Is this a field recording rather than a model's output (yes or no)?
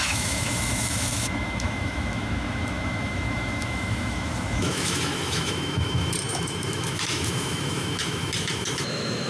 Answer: no